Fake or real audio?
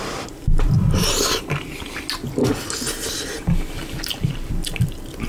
real